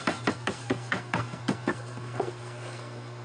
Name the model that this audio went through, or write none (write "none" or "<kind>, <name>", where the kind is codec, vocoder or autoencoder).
codec, SNAC